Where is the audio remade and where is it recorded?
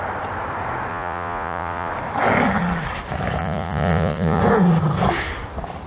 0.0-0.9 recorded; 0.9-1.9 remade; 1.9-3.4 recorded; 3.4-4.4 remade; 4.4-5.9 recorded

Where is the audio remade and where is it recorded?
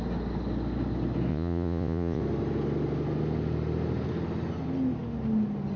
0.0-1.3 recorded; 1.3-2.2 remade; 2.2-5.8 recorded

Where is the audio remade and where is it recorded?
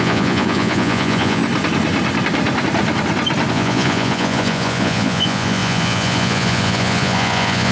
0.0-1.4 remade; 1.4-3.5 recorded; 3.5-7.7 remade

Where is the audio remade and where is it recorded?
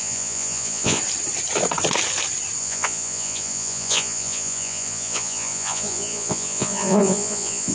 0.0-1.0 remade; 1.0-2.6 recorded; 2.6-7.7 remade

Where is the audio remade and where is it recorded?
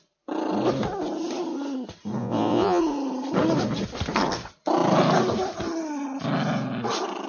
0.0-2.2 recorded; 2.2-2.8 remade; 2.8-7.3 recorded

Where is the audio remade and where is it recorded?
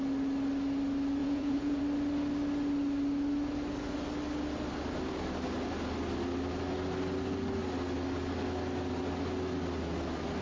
0.0-1.2 recorded; 1.2-1.8 remade; 1.8-10.4 recorded